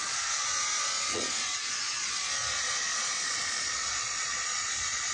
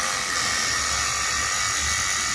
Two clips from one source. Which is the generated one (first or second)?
first